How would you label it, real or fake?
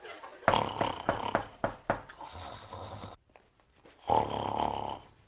real